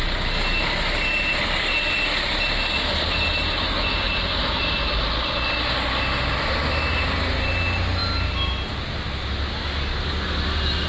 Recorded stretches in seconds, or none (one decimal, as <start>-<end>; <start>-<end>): 0.0-10.9